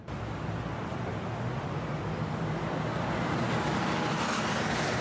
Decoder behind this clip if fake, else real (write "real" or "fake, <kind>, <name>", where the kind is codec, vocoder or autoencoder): real